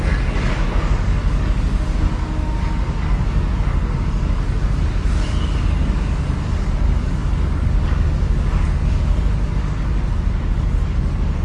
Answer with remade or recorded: remade